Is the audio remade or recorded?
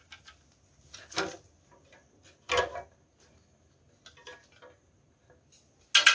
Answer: recorded